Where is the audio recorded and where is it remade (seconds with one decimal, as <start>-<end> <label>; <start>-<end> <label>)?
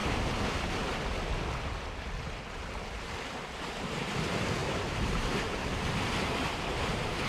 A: 0.0-2.5 recorded; 2.5-7.3 remade